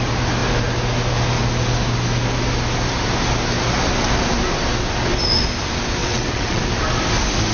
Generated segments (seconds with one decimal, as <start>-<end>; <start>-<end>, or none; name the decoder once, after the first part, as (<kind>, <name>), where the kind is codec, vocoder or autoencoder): 6.0-6.6 (vocoder, WaveNeXt)

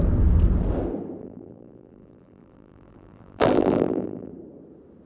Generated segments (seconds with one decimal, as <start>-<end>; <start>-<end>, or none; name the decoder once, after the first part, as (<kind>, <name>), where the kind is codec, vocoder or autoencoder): 1.2-4.3 (vocoder, BigVGAN v2)

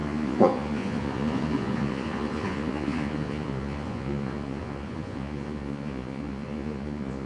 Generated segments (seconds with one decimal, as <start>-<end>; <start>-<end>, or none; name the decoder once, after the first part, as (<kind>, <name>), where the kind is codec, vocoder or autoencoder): 0.0-7.3 (vocoder, Vocos)

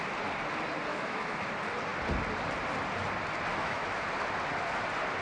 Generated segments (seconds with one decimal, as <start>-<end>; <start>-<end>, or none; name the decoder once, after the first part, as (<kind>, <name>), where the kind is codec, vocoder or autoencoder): 0.9-1.5 (autoencoder, DAC-VAE); 3.5-4.1

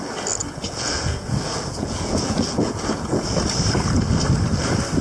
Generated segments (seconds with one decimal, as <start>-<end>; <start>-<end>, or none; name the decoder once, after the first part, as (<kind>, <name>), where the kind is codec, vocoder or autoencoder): 0.4-3.4 (vocoder, Vocos)

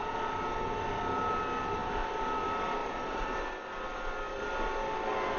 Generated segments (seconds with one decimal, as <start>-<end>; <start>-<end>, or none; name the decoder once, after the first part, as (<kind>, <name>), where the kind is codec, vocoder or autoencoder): 2.8-3.4 (vocoder, BigVGAN v2)

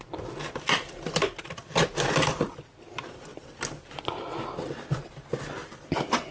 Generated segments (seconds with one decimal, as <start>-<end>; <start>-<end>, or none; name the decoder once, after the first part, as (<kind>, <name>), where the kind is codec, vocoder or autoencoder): none

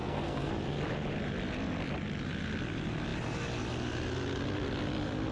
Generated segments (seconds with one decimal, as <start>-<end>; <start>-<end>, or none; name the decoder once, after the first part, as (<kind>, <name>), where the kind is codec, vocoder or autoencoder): 0.0-0.5 (codec, SNAC)